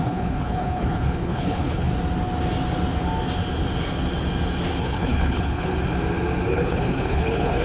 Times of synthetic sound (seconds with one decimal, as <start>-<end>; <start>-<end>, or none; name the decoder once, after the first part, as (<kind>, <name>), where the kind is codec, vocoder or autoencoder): 0.0-1.9 (codec, HILCodec); 4.8-5.7; 6.5-7.6